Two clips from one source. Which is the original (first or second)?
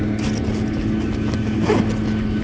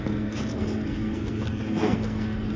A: first